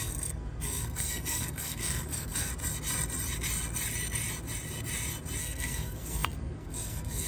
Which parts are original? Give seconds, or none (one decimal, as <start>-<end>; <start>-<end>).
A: 2.5-5.4